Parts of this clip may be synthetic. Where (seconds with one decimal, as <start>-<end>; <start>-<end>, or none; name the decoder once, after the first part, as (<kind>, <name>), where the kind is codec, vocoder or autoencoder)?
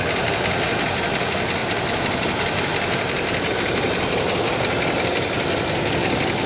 1.6-3.5 (vocoder, BigVGAN v2)